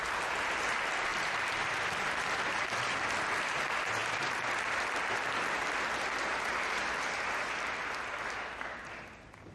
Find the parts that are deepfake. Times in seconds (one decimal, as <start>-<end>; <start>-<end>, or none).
1.1-1.7; 6.3-8.2